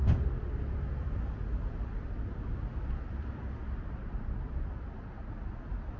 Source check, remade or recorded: recorded